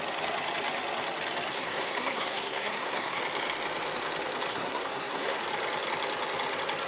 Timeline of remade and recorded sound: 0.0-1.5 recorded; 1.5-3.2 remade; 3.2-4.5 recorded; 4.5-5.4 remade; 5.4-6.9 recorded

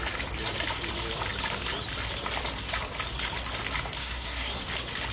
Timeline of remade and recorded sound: 0.0-4.0 recorded; 4.0-4.6 remade; 4.6-5.1 recorded

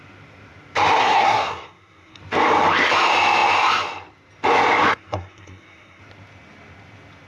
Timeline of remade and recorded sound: 0.0-1.0 recorded; 1.0-2.2 remade; 2.2-4.9 recorded; 4.9-6.0 remade; 6.0-7.3 recorded

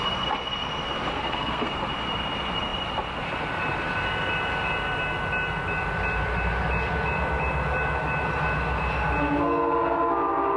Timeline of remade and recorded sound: 0.0-1.1 recorded; 1.1-1.7 remade; 1.7-10.6 recorded

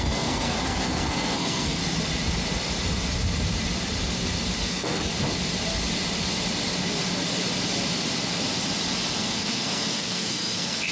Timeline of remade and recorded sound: 0.0-1.8 remade; 1.8-4.6 recorded; 4.6-5.1 remade; 5.1-9.2 recorded; 9.2-10.9 remade

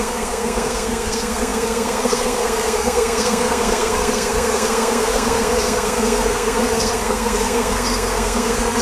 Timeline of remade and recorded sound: 0.0-8.8 remade